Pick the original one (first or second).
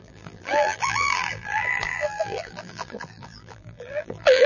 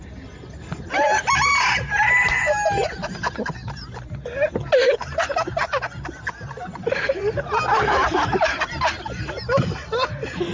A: second